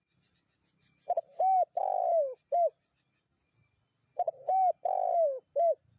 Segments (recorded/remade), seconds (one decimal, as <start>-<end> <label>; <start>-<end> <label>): 0.0-6.0 recorded